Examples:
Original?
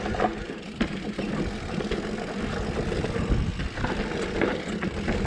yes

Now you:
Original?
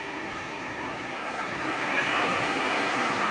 no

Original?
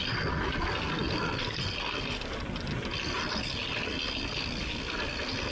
yes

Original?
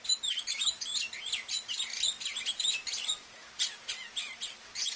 yes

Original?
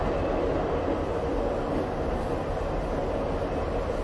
yes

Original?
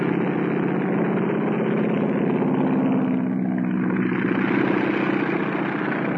yes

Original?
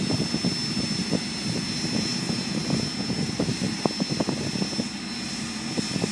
yes